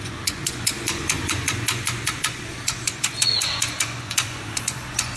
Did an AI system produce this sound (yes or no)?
yes